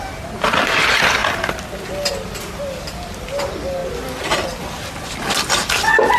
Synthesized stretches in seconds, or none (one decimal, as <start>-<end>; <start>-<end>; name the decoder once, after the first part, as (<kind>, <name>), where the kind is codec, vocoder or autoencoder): none

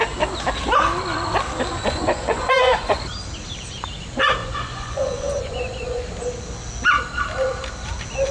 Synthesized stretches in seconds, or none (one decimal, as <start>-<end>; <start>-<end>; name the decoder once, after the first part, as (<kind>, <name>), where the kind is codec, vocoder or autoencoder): 1.7-3.0 (vocoder, Vocos); 4.4-6.1

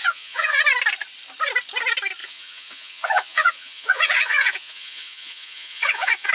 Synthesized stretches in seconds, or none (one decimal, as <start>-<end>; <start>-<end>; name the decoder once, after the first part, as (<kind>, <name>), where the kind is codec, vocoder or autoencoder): 0.0-0.6 (vocoder, Vocos); 2.2-6.3

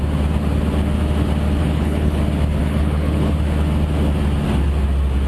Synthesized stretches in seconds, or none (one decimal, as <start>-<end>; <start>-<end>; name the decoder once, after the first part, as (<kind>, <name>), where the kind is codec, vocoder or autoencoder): 1.6-2.2 (codec, HILCodec); 2.6-3.3

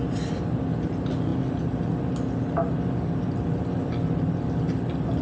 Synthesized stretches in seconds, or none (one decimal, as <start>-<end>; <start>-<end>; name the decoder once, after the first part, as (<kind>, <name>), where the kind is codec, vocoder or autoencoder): none